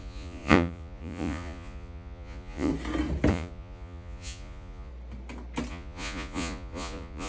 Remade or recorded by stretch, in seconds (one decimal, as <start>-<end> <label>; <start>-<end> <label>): 0.0-2.7 remade; 2.7-3.3 recorded; 3.3-4.9 remade; 4.9-5.7 recorded; 5.7-7.3 remade